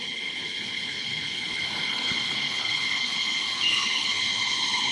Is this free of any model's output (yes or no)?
no